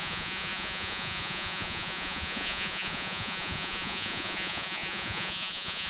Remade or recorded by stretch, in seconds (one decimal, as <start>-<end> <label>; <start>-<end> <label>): 0.0-5.9 remade